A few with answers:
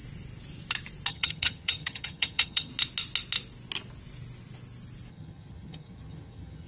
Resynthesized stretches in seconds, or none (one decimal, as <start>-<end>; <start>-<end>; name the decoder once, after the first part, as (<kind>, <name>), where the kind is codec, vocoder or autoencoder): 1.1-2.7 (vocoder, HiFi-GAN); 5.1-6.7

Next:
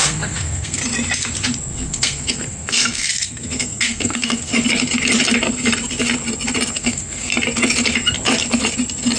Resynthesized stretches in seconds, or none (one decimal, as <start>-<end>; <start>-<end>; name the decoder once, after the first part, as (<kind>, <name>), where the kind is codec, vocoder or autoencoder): 0.0-0.8 (codec, SNAC); 1.7-4.5; 6.7-7.3

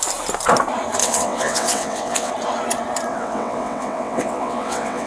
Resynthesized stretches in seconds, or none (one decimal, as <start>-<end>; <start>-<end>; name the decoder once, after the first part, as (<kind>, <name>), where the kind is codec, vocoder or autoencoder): 1.0-2.3 (vocoder, WaveNeXt); 3.1-5.1